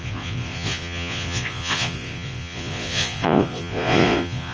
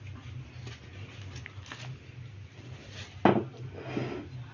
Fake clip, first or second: first